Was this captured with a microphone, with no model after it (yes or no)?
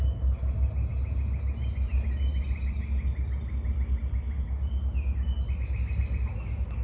yes